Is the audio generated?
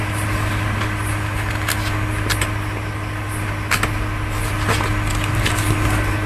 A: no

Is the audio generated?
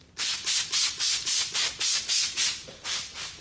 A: yes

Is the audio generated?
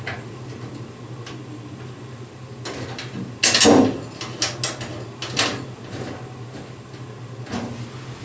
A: no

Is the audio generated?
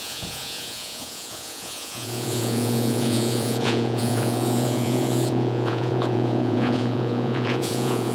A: yes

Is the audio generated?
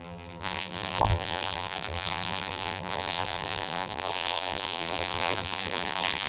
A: yes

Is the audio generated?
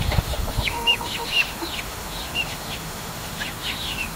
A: yes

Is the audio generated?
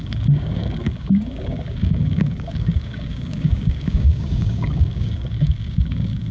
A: yes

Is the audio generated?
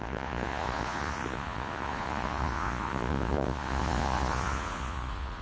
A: yes